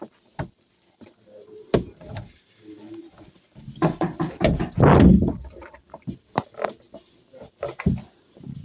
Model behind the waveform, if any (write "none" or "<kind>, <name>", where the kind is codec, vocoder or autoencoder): none